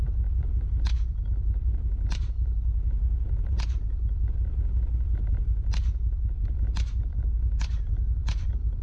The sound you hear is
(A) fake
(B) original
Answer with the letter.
A